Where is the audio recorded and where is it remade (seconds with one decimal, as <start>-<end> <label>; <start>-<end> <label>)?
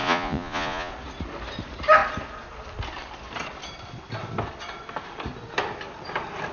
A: 0.0-0.9 remade; 0.9-6.5 recorded